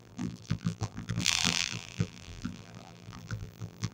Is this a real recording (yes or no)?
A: no